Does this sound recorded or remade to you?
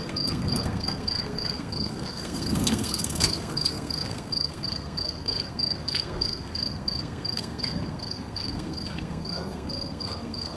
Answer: remade